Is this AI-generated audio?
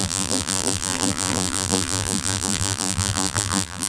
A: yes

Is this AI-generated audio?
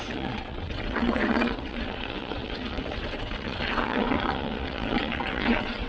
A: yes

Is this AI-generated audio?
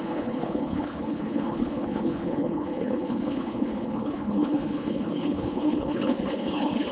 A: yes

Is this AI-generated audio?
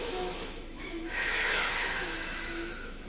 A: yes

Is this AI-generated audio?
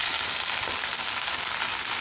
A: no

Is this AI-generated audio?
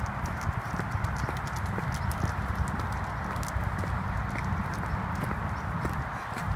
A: no